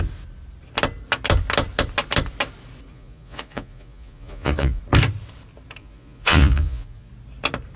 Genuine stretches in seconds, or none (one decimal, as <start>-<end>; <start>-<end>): 0.0-2.9; 4.8-5.8; 7.1-7.8